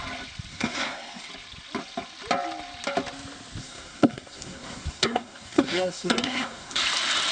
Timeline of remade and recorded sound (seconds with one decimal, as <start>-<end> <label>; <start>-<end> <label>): 0.0-0.5 recorded; 0.5-1.3 remade; 1.3-3.6 recorded; 3.6-6.8 remade; 6.8-7.3 recorded